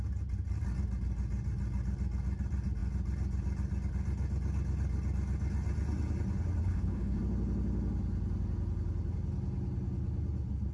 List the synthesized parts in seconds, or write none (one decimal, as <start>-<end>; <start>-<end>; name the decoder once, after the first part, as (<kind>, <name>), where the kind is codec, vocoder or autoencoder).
6.6-7.2 (codec, HILCodec)